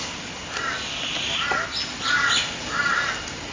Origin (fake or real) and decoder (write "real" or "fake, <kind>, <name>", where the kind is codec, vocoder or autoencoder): real